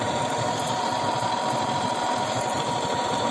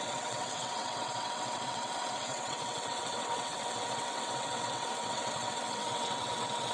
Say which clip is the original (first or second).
first